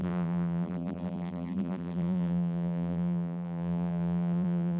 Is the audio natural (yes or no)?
no